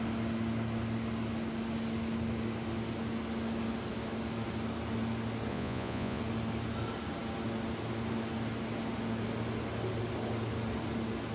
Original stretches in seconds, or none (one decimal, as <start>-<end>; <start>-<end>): 0.0-5.5; 6.2-11.3